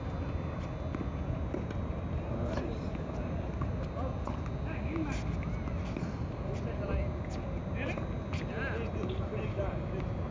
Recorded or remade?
recorded